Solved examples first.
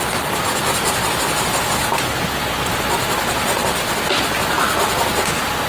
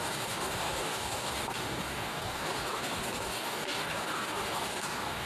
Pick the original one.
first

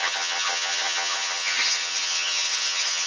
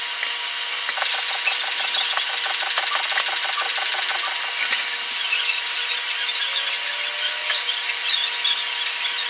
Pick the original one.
second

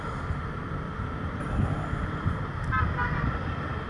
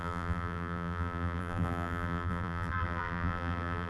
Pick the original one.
first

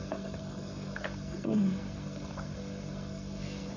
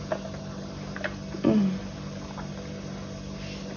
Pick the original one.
second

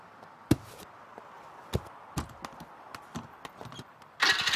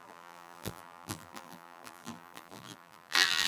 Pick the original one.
first